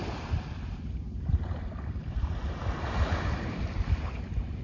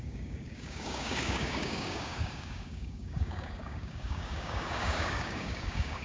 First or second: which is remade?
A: second